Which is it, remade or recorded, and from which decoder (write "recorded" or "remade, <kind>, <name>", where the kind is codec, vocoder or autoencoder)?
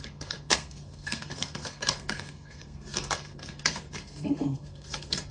remade, codec, SNAC